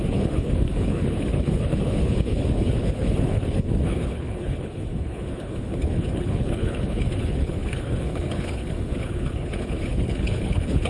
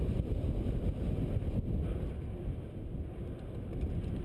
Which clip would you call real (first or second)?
second